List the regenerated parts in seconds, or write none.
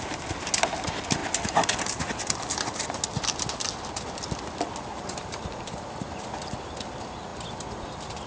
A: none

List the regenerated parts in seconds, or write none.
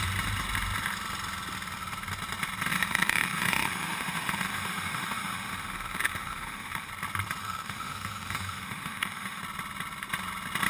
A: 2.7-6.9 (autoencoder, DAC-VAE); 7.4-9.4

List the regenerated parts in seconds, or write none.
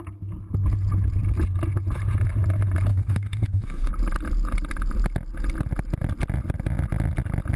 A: 2.9-3.9 (autoencoder, DAC-VAE)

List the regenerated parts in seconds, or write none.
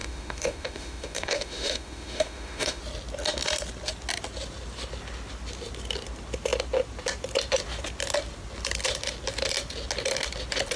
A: 0.0-2.8 (autoencoder, DAC-VAE)